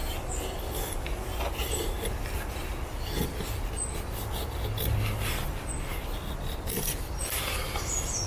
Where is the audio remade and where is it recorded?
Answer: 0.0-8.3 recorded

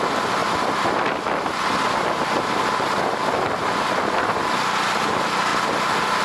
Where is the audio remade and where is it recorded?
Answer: 0.0-6.2 recorded

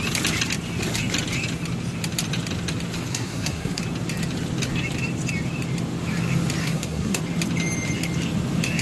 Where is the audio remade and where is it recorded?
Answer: 0.0-3.1 recorded; 3.1-3.8 remade; 3.8-6.6 recorded; 6.6-7.2 remade; 7.2-8.8 recorded

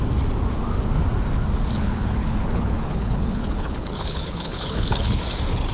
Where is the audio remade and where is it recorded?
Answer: 0.0-1.8 recorded; 1.8-5.2 remade; 5.2-5.7 recorded